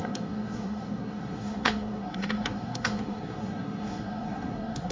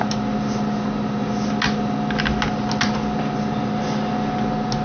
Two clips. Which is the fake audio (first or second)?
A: first